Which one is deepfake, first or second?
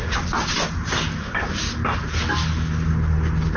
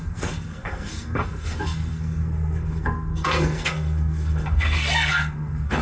second